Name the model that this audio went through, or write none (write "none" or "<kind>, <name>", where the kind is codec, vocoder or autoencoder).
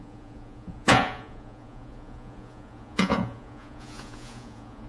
vocoder, Vocos